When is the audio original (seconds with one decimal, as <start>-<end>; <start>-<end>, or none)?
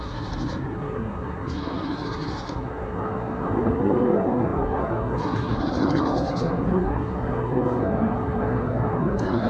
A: none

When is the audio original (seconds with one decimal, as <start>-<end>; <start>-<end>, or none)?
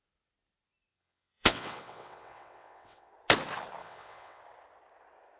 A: 0.0-0.9; 3.1-3.8; 4.4-5.4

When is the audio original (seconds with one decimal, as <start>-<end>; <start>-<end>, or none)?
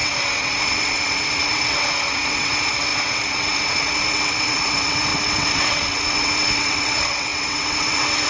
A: none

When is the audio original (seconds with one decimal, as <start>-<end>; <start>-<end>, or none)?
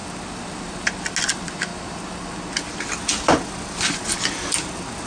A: 0.0-5.1